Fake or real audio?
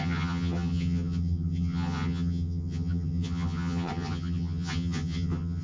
fake